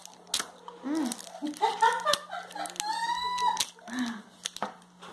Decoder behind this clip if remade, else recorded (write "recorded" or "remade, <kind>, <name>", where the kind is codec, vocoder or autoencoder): recorded